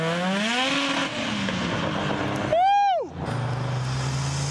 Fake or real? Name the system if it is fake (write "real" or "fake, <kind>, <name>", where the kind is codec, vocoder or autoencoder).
real